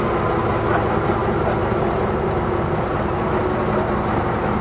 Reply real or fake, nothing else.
real